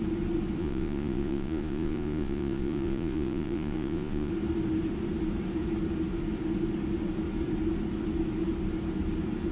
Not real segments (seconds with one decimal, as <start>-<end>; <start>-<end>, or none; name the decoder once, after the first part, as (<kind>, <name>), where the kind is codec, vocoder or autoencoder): 0.6-4.3 (vocoder, Vocos)